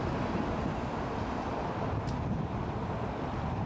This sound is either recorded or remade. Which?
recorded